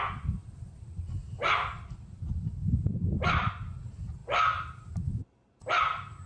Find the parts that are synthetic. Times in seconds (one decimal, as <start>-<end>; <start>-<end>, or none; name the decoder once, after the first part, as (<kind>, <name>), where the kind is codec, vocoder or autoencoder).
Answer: none